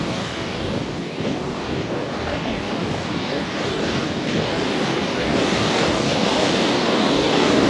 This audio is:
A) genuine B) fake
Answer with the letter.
B